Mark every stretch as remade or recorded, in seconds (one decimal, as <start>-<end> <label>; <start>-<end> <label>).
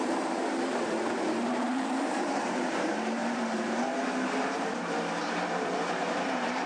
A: 0.0-3.2 remade; 3.2-4.5 recorded; 4.5-6.7 remade